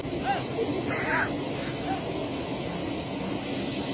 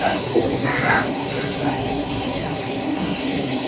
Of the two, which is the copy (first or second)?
second